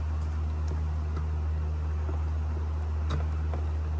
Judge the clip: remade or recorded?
recorded